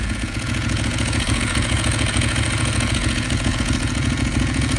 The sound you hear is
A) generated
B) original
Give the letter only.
A